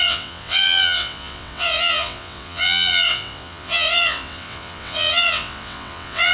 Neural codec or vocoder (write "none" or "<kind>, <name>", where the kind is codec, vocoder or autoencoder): vocoder, WaveNeXt